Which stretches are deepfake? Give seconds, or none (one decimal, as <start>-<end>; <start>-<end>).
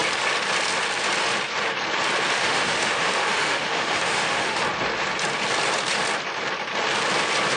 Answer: 2.4-4.6